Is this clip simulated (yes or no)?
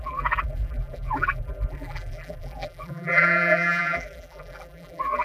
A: yes